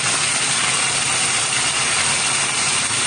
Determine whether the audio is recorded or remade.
recorded